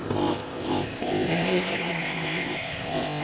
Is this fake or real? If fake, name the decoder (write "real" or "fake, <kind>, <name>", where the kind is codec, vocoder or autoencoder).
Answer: fake, codec, ZipCodec